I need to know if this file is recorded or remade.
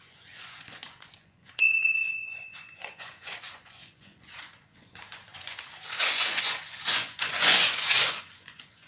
remade